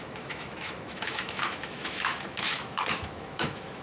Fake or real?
fake